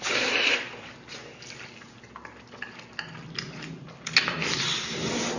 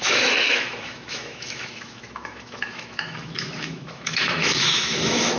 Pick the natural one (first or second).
first